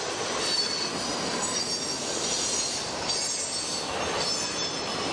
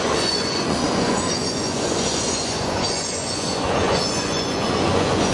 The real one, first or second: first